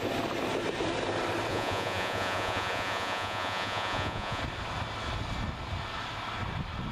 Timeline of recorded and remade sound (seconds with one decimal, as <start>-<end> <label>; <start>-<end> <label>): 0.0-1.5 recorded; 1.5-4.4 remade; 4.4-6.9 recorded